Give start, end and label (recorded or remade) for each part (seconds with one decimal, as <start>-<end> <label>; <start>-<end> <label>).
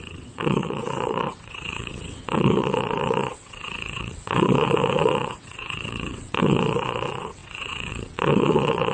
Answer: 0.0-8.9 remade